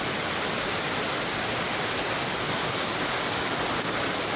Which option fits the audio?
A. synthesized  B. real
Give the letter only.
B